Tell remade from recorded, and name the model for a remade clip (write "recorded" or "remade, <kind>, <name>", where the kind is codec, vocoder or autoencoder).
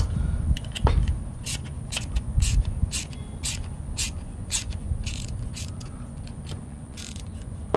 remade, vocoder, Vocos